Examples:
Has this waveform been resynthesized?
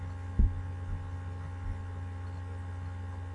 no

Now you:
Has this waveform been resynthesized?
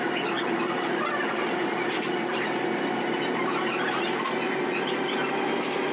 no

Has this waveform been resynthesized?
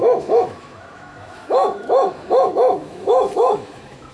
yes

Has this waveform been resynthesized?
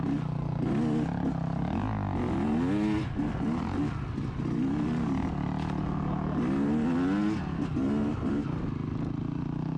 no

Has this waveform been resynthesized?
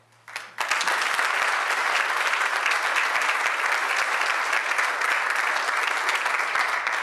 no